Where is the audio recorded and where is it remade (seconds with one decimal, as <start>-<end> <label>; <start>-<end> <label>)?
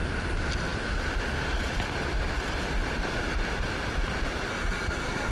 0.0-4.5 recorded; 4.5-5.3 remade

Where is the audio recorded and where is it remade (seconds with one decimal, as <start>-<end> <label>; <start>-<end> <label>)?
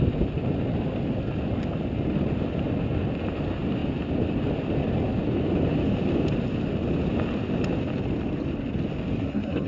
0.0-9.2 recorded; 9.2-9.7 remade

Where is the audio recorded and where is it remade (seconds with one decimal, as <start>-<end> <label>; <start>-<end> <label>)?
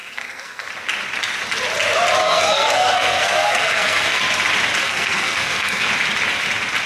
0.0-0.7 remade; 0.7-2.2 recorded; 2.2-4.2 remade; 4.2-4.8 recorded; 4.8-5.9 remade; 5.9-6.9 recorded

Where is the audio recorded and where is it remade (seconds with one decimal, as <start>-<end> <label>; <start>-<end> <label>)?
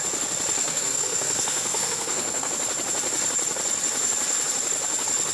0.0-0.6 recorded; 0.6-2.5 remade; 2.5-5.3 recorded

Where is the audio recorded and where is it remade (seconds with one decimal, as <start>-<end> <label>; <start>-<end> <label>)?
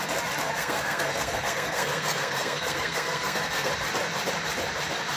0.0-0.6 recorded; 0.6-3.7 remade; 3.7-5.2 recorded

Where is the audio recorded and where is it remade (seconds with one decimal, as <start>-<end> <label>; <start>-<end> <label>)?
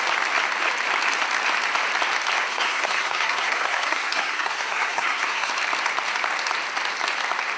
0.0-2.5 recorded; 2.5-5.5 remade; 5.5-7.6 recorded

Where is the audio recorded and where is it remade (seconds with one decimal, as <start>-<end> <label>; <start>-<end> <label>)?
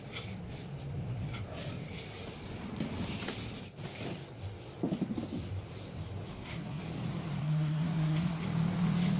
0.0-6.3 recorded; 6.3-6.8 remade; 6.8-7.4 recorded; 7.4-8.4 remade; 8.4-9.2 recorded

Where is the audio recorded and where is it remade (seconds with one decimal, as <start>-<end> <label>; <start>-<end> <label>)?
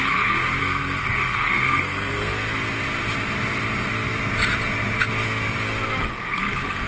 0.0-0.6 recorded; 0.6-2.3 remade; 2.3-6.0 recorded; 6.0-6.9 remade